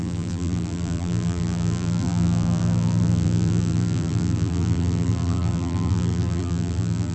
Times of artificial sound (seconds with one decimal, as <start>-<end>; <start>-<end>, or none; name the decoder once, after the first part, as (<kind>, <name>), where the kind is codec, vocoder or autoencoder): 0.0-7.1 (vocoder, BigVGAN v2)